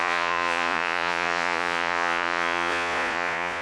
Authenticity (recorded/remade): remade